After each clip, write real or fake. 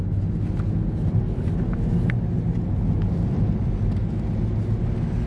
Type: real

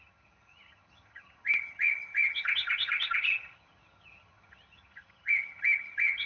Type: fake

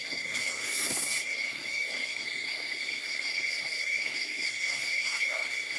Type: fake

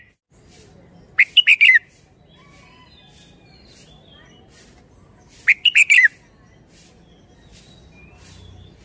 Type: real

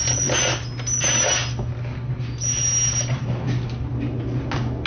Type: real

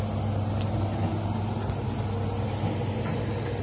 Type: real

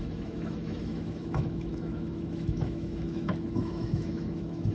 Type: fake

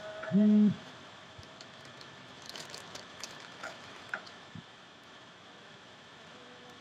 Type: fake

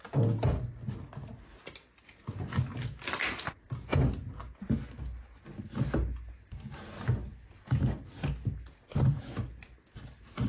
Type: real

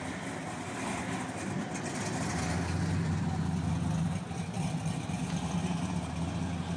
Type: real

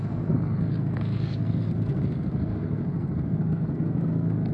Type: fake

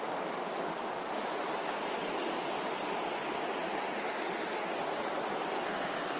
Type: real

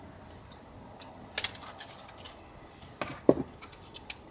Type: real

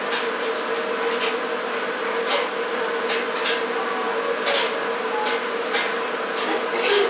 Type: real